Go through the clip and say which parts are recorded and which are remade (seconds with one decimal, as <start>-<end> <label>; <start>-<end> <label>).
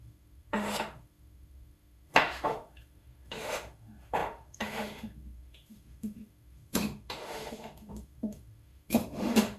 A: 0.0-9.6 remade